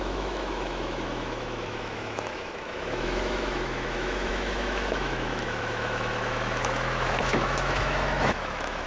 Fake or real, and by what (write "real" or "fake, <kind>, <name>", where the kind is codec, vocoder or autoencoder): fake, autoencoder, DAC-VAE